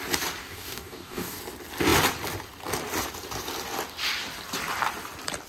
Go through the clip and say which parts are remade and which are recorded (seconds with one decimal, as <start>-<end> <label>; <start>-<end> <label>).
0.0-0.4 recorded; 0.4-1.4 remade; 1.4-5.5 recorded